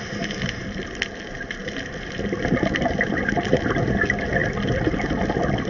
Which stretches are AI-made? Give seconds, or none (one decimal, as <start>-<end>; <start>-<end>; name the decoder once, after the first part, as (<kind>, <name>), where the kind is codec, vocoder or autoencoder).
none